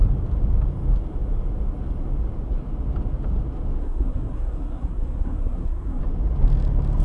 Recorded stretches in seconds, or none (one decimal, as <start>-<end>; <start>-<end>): 0.0-3.8; 6.0-7.0